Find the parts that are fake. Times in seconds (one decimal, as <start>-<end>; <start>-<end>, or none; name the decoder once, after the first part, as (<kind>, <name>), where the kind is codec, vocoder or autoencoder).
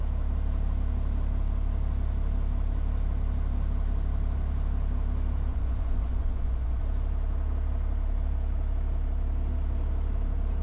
5.5-6.8 (vocoder, Vocos)